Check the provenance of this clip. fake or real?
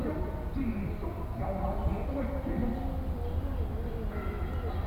real